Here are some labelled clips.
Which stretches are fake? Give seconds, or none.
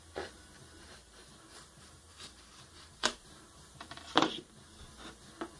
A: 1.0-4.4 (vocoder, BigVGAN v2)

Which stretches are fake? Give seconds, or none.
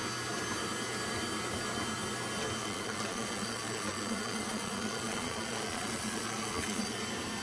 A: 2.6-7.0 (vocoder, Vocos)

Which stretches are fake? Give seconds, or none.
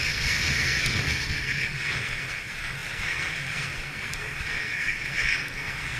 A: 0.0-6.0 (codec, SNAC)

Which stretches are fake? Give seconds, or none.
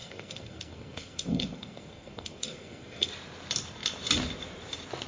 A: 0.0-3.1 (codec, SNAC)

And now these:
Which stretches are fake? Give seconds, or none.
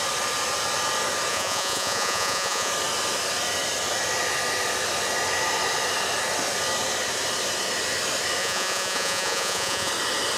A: 1.3-2.7 (vocoder, Vocos); 8.4-9.9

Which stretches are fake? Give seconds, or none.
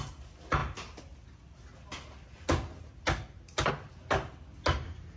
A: none